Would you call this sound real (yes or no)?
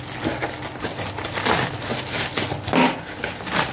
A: yes